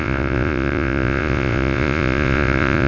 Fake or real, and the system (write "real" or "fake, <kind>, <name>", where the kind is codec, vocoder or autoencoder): fake, vocoder, Vocos